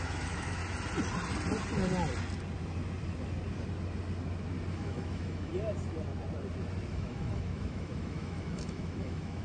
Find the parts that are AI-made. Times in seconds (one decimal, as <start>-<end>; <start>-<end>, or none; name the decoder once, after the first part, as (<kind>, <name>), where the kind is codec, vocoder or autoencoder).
0.0-0.6 (autoencoder, DAC-VAE); 4.7-5.5; 6.9-9.4